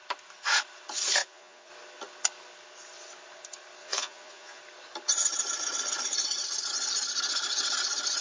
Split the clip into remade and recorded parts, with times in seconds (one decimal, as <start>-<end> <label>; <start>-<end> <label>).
0.0-1.2 recorded; 1.2-1.7 remade; 1.7-3.8 recorded; 3.8-4.6 remade; 4.6-8.2 recorded